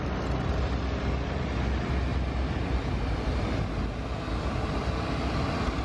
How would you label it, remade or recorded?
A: recorded